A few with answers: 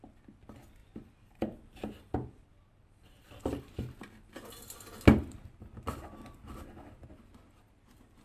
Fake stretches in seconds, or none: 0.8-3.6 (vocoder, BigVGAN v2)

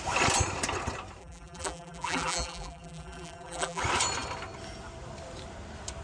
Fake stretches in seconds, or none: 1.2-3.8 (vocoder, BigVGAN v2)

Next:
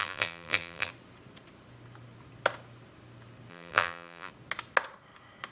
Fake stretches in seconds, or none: 0.0-0.9 (vocoder, BigVGAN v2); 3.5-4.3